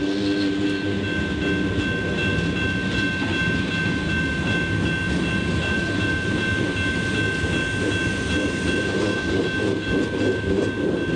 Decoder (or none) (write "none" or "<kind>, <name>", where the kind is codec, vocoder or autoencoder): none